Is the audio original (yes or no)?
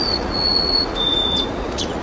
no